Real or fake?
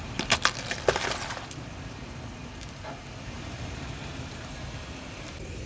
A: real